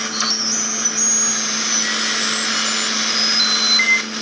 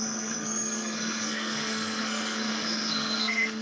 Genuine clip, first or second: first